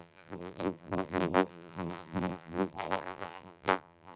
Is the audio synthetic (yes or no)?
yes